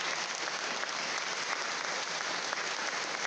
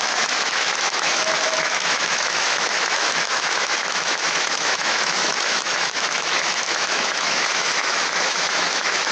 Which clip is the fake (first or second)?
second